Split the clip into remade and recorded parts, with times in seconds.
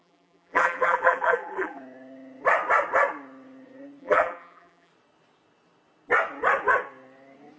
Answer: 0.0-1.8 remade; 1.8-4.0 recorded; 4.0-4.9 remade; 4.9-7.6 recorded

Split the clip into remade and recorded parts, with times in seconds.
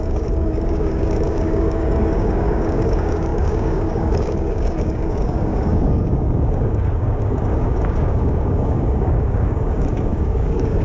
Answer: 0.0-10.8 remade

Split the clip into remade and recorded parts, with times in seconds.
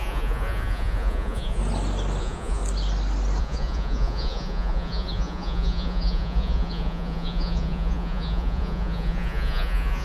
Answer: 0.0-1.6 remade; 1.6-2.2 recorded; 2.2-2.6 remade; 2.6-3.4 recorded; 3.4-10.0 remade